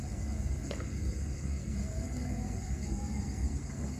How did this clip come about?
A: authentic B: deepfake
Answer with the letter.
B